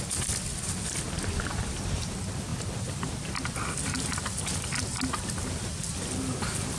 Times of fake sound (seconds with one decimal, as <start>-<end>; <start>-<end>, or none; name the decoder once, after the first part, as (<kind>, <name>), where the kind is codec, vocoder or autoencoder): none